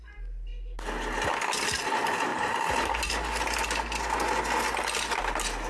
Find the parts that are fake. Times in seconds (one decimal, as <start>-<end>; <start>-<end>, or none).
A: 2.3-3.1

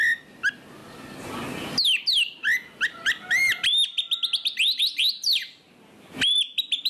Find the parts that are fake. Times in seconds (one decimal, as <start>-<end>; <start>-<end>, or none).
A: none

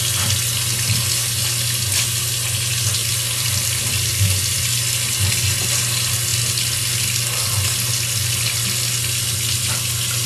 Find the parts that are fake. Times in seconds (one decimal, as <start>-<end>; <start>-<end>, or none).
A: 3.0-4.6

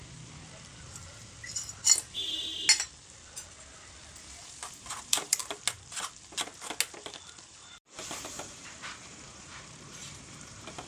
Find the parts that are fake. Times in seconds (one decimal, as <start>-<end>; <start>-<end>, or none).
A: 4.8-5.4; 7.5-10.9

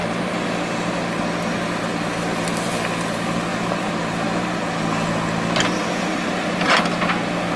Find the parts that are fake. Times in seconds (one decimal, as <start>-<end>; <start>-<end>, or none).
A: none

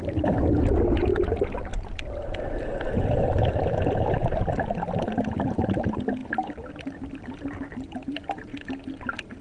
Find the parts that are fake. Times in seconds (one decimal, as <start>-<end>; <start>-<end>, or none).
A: none

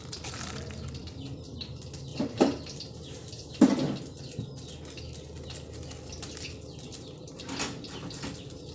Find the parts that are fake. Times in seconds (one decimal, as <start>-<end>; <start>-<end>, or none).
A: 2.1-3.6

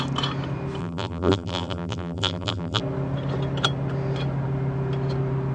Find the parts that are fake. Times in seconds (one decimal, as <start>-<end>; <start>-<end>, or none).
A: 0.8-2.8